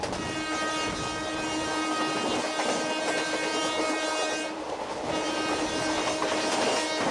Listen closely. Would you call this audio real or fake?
real